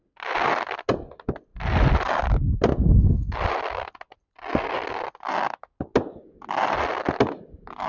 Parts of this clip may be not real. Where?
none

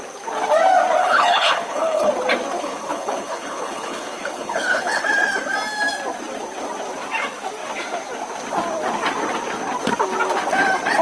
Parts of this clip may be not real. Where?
1.0-2.1; 2.6-5.0